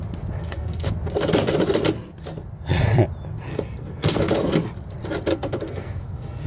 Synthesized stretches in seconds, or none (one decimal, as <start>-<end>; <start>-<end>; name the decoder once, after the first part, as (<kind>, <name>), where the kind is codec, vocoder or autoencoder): 0.4-0.9 (codec, SNAC); 3.5-4.2; 5.3-6.5